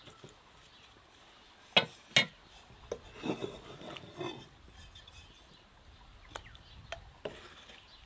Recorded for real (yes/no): yes